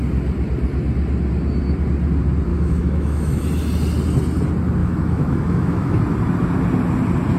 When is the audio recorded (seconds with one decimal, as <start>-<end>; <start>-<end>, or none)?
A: 0.0-2.5; 3.4-4.8; 6.0-7.4